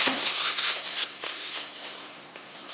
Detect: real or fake fake